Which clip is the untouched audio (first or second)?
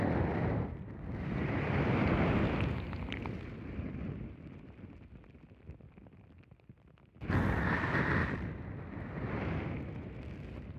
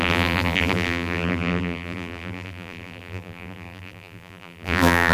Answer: first